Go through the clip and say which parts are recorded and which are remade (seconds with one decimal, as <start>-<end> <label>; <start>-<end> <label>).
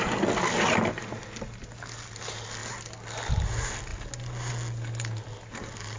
0.0-6.0 recorded